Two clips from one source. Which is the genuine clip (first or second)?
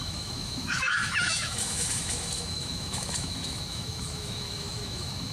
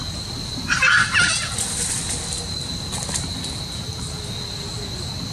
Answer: second